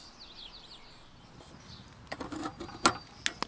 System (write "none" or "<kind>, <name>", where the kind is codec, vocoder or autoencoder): none